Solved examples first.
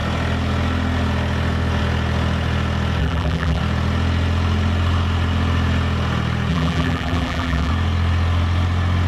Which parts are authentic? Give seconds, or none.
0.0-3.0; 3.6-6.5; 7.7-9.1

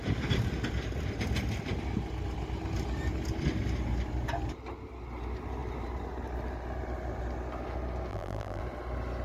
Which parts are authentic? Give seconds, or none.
0.0-8.1; 8.6-9.2

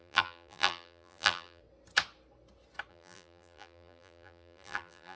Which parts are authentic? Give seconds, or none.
1.6-2.9

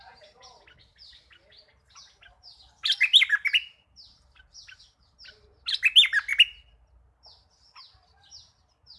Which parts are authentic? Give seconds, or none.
0.0-0.9; 3.3-9.0